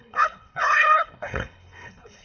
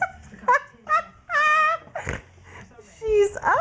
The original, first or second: second